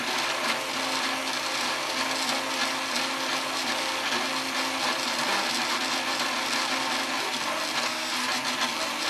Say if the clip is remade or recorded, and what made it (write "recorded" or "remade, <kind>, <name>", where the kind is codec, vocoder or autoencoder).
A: recorded